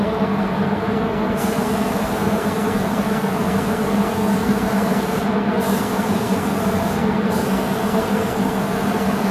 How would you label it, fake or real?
fake